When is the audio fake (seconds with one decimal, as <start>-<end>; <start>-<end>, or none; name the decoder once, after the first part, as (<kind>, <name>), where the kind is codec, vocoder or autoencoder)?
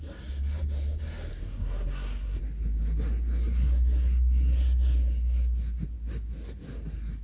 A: 1.3-2.4 (codec, SNAC)